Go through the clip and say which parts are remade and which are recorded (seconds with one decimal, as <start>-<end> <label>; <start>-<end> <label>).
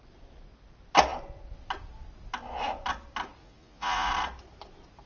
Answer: 0.0-3.4 recorded; 3.4-4.1 remade; 4.1-5.1 recorded